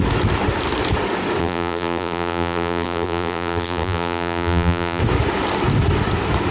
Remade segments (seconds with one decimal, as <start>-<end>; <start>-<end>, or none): 1.4-5.0

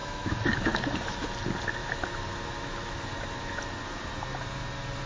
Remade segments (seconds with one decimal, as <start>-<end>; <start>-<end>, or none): 0.0-1.3; 1.8-3.6

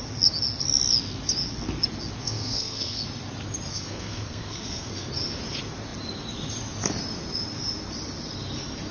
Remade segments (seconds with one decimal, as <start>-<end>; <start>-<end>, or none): 2.2-3.0; 3.7-5.1